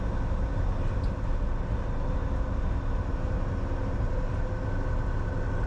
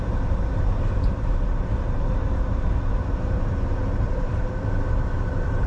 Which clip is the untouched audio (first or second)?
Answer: first